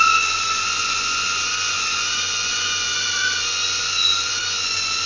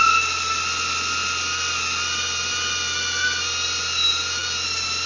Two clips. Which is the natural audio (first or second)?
second